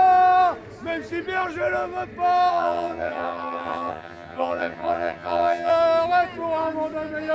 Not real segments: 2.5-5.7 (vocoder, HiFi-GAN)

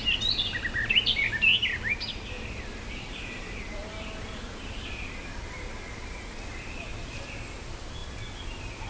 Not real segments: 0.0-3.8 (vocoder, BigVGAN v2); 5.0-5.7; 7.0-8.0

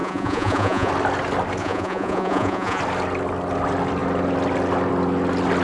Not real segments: 0.0-0.9 (vocoder, Vocos); 1.6-2.8

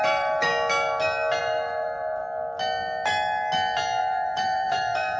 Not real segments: 0.0-0.5 (vocoder, BigVGAN v2); 1.4-2.2; 4.0-5.2